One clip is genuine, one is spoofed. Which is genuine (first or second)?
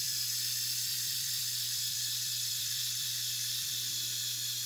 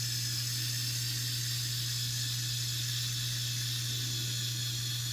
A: second